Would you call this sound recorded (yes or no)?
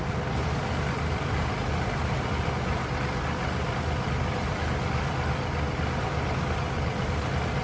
yes